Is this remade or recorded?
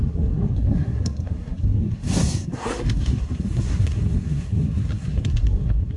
remade